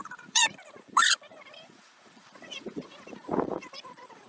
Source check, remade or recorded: remade